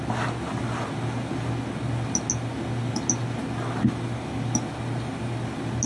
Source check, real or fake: real